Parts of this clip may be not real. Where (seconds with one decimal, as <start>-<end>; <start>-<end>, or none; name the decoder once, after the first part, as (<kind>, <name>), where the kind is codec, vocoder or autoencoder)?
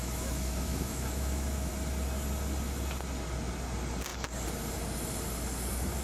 0.0-1.7 (autoencoder, DAC-VAE)